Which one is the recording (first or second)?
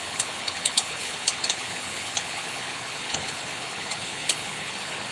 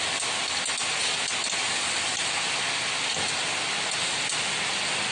second